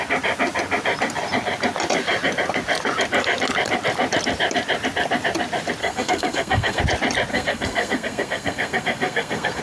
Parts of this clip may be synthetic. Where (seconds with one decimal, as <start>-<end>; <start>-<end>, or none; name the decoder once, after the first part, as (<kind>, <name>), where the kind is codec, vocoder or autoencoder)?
5.8-6.8 (codec, SNAC); 7.3-9.6